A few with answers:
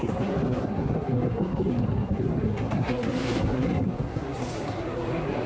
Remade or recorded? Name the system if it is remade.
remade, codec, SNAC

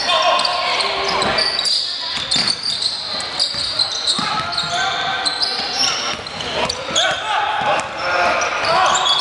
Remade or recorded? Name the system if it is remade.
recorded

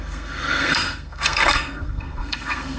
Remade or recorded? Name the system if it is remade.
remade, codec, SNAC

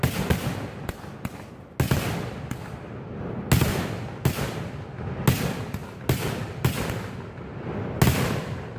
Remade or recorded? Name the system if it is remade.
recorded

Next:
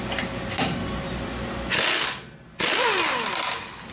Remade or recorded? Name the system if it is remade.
recorded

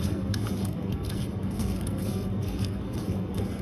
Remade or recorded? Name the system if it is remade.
remade, codec, SNAC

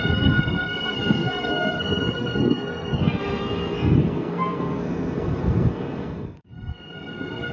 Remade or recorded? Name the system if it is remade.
remade, codec, SNAC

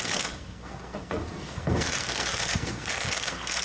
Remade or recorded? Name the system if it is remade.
remade, codec, SNAC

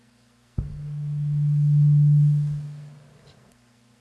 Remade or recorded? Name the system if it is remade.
remade, codec, SNAC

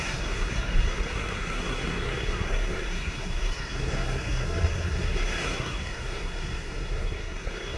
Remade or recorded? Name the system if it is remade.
remade, codec, SNAC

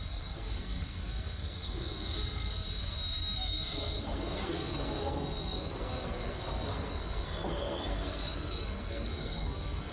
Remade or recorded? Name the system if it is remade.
remade, codec, SNAC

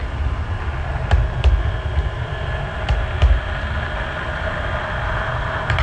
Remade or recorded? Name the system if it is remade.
recorded